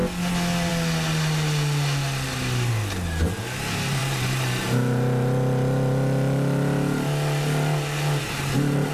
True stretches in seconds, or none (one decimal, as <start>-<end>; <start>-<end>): 0.0-8.9